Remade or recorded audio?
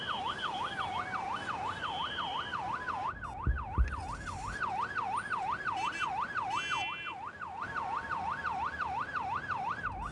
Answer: recorded